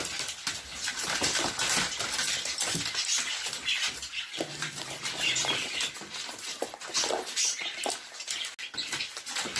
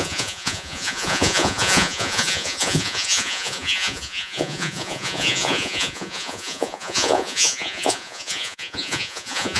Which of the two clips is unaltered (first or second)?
first